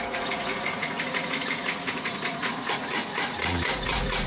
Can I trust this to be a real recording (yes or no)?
no